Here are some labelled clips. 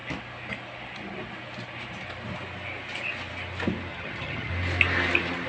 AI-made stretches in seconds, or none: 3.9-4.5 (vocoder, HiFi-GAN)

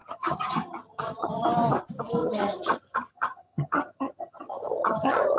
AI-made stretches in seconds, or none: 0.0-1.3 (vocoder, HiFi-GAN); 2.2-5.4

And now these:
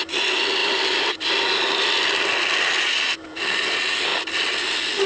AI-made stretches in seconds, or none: none